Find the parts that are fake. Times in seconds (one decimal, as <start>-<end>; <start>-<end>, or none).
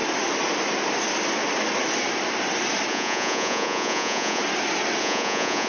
2.9-4.4; 5.0-5.7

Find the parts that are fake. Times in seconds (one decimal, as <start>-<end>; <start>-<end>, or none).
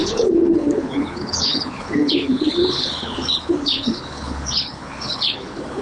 0.0-5.8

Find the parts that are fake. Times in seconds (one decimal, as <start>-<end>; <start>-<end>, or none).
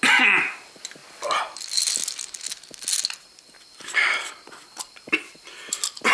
none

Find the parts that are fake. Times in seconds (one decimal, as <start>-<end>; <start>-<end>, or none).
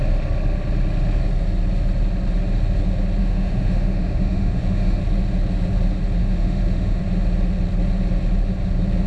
3.2-5.0; 6.2-7.0